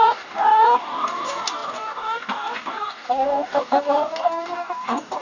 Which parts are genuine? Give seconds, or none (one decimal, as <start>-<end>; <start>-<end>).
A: none